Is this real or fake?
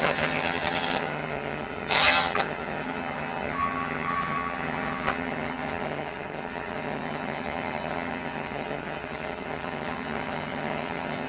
fake